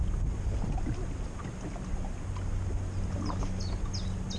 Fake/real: real